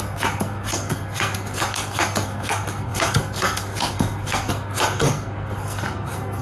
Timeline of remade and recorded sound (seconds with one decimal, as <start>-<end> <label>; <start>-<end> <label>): 0.0-6.4 remade